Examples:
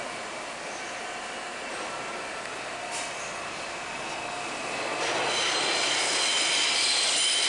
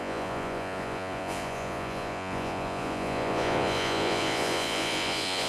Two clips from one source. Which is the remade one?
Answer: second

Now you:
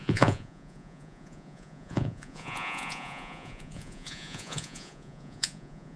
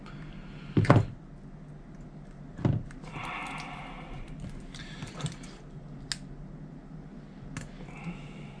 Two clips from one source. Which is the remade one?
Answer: first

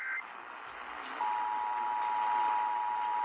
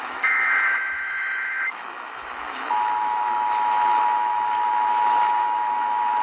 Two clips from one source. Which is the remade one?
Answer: second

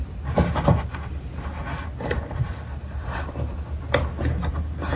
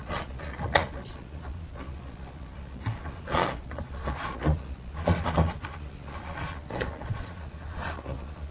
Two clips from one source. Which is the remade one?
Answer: second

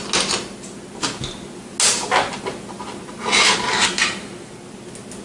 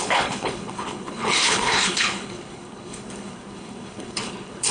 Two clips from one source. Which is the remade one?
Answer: second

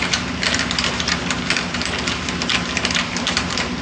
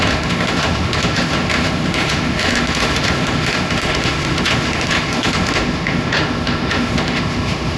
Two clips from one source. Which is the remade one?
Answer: second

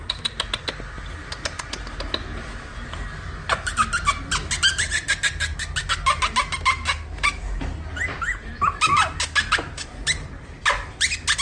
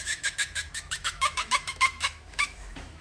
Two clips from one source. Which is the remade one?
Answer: second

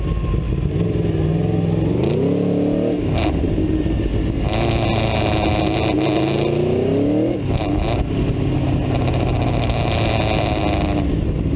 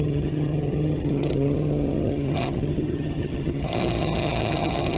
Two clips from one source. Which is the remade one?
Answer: second